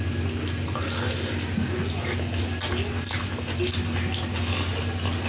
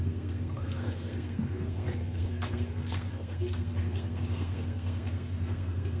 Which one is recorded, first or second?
first